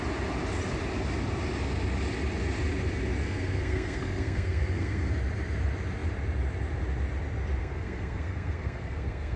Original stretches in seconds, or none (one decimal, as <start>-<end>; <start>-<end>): 0.0-3.2; 5.1-7.6